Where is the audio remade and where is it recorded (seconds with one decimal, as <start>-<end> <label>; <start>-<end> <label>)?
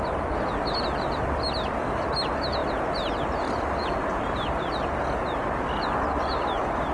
0.0-6.9 recorded